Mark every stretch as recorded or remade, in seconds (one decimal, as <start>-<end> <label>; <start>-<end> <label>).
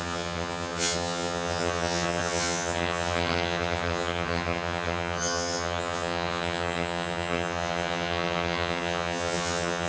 0.0-9.9 remade